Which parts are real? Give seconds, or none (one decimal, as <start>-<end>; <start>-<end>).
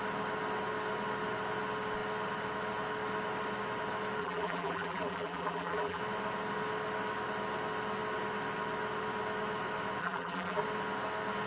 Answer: 0.0-4.2; 6.0-10.0; 10.6-11.5